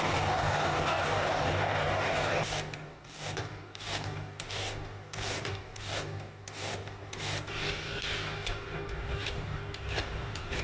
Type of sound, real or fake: fake